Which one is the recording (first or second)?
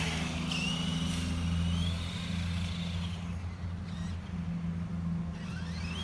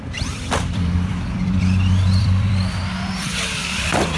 first